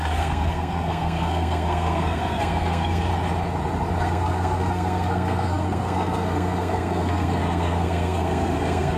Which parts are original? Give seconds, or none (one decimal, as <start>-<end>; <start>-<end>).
3.1-4.0